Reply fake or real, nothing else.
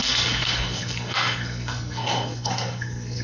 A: fake